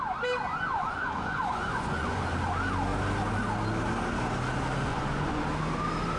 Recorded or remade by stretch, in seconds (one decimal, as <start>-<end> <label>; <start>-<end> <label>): 0.0-0.5 recorded; 0.5-2.2 remade; 2.2-4.9 recorded; 4.9-5.4 remade; 5.4-6.2 recorded